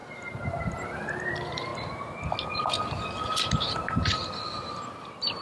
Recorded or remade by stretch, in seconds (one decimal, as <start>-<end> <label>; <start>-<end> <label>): 0.0-1.7 remade; 1.7-4.9 recorded; 4.9-5.4 remade